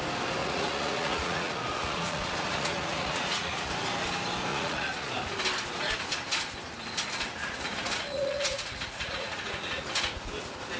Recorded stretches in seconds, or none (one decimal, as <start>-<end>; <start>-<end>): 0.0-0.4; 3.7-4.5; 5.1-7.4; 9.8-10.8